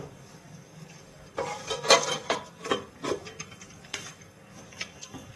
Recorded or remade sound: remade